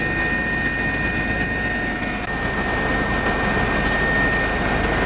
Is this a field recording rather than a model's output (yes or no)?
yes